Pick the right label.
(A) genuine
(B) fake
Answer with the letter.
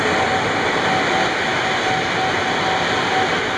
A